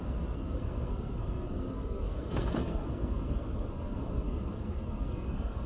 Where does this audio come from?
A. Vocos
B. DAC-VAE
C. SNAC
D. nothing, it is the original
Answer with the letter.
C